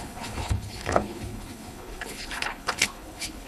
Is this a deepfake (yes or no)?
yes